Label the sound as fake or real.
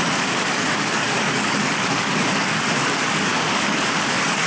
fake